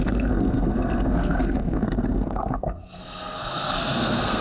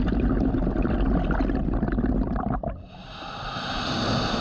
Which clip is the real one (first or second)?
second